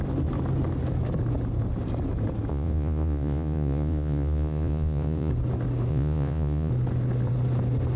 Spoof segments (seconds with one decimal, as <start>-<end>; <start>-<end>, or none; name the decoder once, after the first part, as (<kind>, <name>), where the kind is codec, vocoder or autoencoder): 2.5-5.3 (vocoder, Vocos); 5.9-6.7

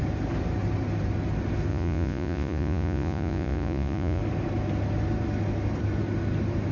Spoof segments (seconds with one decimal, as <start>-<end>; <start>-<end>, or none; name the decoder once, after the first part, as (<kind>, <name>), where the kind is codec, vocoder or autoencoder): 1.7-4.2 (vocoder, Vocos)

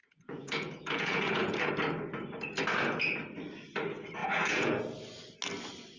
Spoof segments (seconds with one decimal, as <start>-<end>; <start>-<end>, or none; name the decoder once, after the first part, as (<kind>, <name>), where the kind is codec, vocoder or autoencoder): 0.0-1.7 (vocoder, Vocos); 4.2-4.8

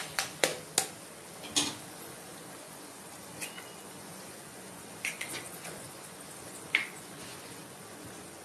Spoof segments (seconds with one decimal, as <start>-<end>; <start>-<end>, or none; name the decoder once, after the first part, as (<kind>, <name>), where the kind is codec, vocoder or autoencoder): 0.0-0.5 (vocoder, Vocos); 1.7-8.4

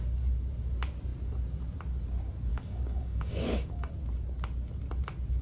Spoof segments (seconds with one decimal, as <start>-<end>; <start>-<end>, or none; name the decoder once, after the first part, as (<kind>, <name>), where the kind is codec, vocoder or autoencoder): 2.5-3.9 (codec, DAC)

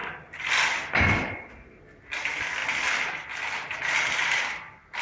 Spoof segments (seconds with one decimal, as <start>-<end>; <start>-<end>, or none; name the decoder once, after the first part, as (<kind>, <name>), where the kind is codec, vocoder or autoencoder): none